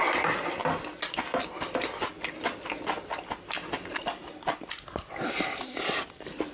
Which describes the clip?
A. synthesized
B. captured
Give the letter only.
B